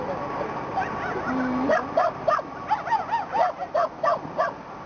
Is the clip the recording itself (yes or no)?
yes